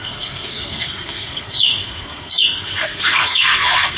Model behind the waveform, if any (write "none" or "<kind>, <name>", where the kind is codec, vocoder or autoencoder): codec, SNAC